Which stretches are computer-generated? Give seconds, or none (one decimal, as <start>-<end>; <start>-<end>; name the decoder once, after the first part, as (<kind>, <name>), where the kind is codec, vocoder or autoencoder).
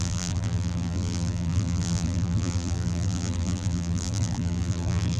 0.0-5.2 (vocoder, BigVGAN v2)